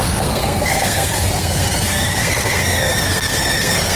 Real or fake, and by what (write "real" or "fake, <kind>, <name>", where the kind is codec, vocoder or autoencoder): fake, codec, SNAC